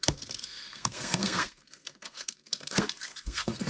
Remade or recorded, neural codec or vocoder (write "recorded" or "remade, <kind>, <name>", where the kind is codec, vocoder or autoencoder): remade, codec, SNAC